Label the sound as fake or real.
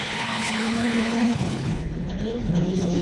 fake